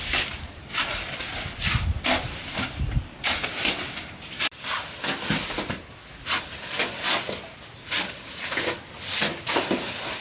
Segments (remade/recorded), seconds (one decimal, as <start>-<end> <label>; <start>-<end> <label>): 0.0-10.2 recorded